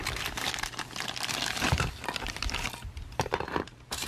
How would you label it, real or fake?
real